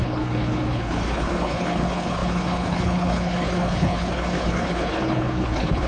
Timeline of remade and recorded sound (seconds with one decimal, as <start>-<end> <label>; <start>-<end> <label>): 0.0-5.9 remade